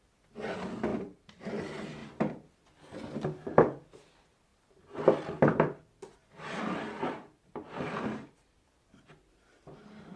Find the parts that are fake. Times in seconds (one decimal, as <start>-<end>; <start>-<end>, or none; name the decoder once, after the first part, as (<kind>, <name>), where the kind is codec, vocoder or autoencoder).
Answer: 0.9-1.6 (vocoder, BigVGAN v2)